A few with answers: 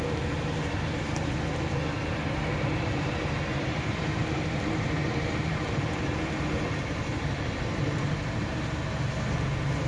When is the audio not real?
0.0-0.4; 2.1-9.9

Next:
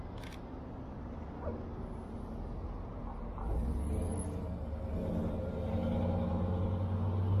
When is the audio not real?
none

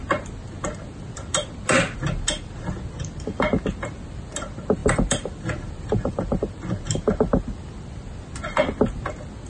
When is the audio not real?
4.8-6.4

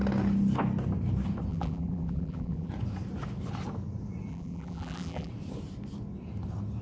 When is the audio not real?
1.5-2.7; 4.3-5.3

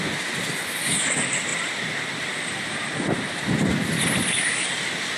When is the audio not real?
1.5-3.5

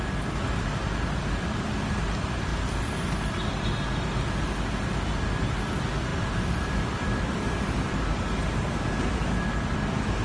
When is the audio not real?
none